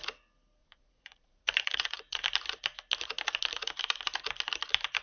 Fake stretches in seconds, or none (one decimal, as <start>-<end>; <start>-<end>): 0.6-2.2